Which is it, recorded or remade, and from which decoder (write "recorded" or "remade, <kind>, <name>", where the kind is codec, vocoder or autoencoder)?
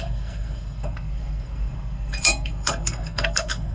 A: remade, codec, SNAC